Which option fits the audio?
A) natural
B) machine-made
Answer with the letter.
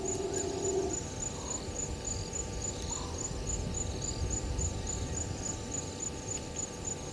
A